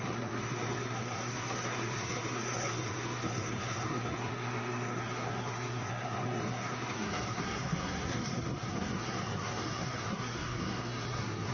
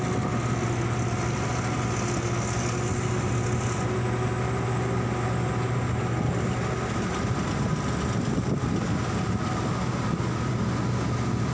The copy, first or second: first